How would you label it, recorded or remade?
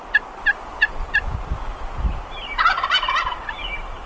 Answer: recorded